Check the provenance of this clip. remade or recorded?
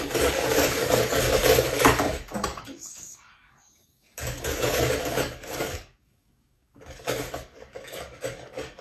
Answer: remade